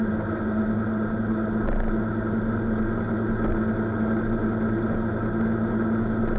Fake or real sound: real